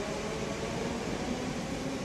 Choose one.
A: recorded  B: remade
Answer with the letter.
A